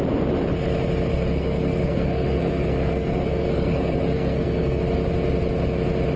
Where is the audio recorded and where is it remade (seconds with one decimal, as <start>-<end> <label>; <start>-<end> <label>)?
0.0-1.1 recorded; 1.1-4.8 remade; 4.8-6.2 recorded

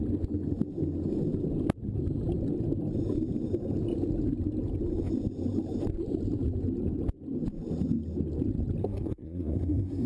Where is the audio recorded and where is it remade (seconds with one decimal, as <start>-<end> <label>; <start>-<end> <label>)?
0.0-8.8 recorded; 8.8-10.1 remade

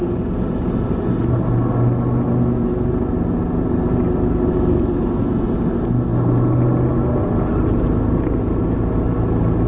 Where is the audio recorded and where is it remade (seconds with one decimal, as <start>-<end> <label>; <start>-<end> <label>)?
0.0-9.7 recorded

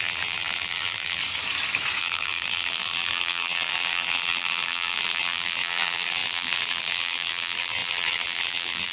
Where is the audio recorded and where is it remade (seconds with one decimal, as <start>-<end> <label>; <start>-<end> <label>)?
0.0-1.2 remade; 1.2-2.0 recorded; 2.0-8.9 remade